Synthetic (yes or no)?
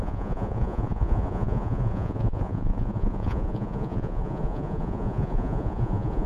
yes